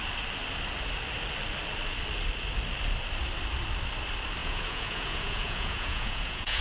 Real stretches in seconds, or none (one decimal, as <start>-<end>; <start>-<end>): 0.0-4.4